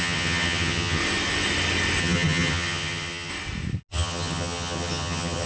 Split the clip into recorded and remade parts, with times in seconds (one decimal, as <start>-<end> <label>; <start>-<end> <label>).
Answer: 0.0-1.0 remade; 1.0-2.0 recorded; 2.0-3.3 remade; 3.3-3.9 recorded; 3.9-5.5 remade